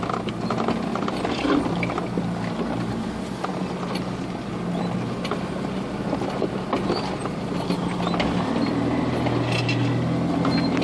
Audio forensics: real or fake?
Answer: real